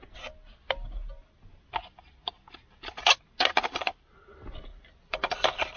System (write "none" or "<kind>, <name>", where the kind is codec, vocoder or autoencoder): none